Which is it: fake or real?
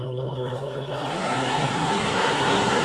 fake